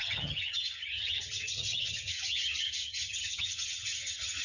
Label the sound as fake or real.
fake